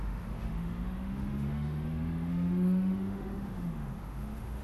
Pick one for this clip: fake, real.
fake